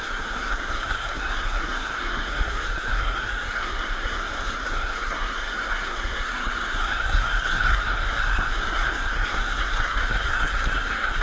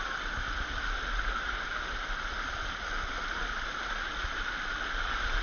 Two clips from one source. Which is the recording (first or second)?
second